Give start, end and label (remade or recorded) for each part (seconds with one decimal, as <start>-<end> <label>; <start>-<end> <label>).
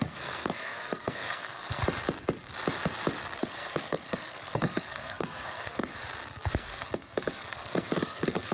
0.0-1.8 remade; 1.8-3.4 recorded; 3.4-5.9 remade; 5.9-6.5 recorded; 6.5-8.5 remade